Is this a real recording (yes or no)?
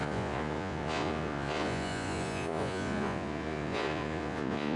no